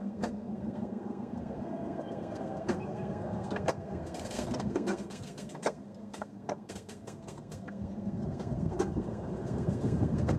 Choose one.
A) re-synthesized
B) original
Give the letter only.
A